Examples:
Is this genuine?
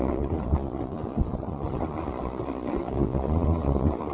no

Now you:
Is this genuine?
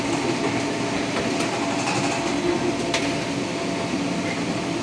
yes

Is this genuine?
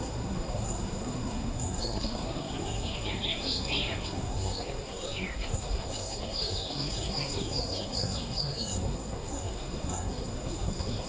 no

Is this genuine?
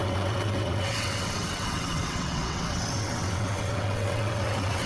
no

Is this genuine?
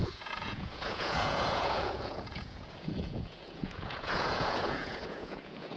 no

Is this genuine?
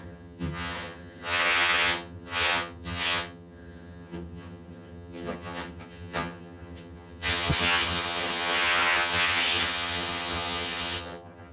no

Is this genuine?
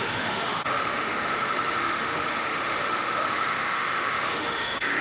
no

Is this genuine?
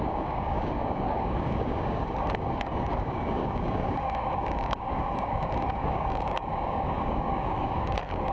no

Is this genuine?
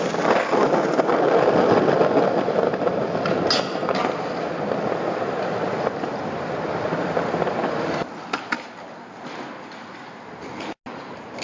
yes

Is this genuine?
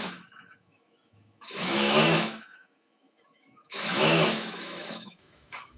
no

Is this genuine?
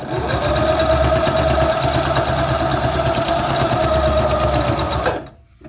yes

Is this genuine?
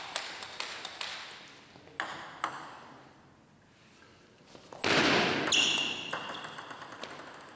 yes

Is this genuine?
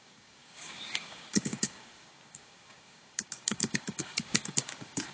no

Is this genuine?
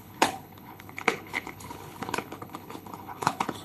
no